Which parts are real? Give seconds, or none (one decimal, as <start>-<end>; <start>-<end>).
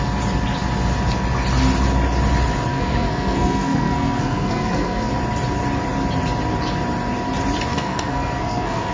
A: 0.0-2.7; 5.1-7.7